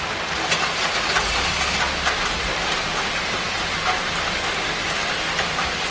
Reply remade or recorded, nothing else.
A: recorded